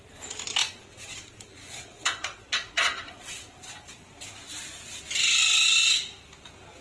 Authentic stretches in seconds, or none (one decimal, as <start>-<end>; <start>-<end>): 0.0-0.6; 4.1-6.8